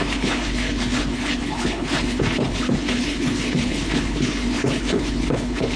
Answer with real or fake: fake